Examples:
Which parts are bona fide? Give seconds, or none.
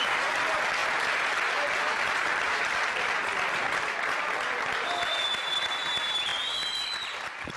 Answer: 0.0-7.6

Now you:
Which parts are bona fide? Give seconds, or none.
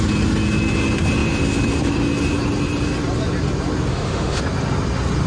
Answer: 0.0-3.9; 4.4-5.3